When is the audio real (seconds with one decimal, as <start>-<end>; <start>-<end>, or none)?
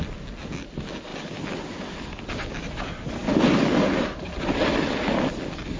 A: 0.0-5.8